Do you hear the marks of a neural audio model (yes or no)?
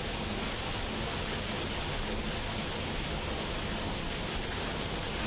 no